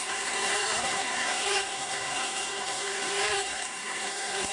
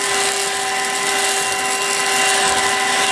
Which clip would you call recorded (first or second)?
second